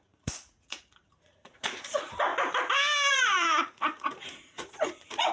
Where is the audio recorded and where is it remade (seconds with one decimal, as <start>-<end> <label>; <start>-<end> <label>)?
0.0-2.3 remade; 2.3-3.1 recorded; 3.1-5.3 remade